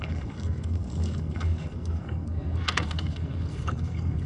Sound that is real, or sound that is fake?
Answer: fake